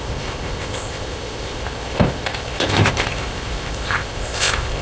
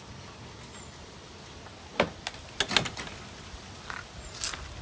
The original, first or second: second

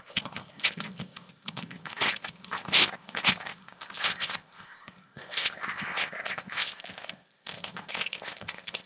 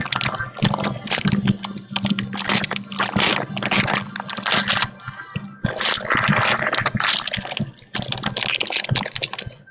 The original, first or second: second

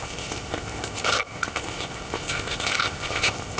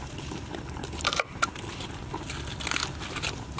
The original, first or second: second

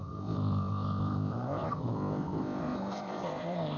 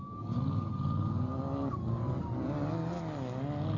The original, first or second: second